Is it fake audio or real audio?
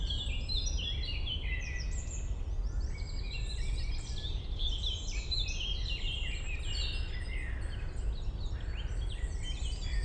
real